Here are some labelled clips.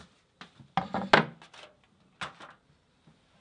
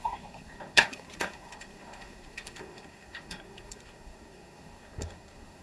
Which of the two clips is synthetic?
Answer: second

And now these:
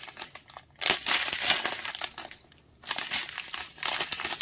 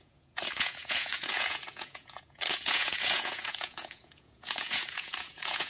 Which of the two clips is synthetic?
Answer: second